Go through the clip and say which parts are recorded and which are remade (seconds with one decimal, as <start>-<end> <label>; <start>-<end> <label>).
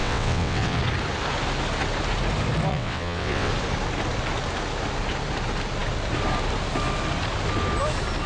0.0-0.8 remade; 0.8-2.7 recorded; 2.7-3.5 remade; 3.5-8.3 recorded